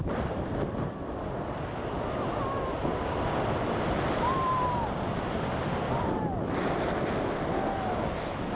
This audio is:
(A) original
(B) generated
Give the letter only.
A